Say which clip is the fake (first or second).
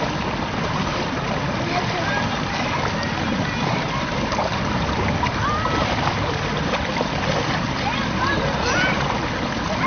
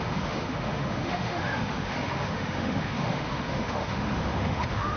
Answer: second